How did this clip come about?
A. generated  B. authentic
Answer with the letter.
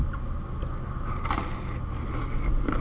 B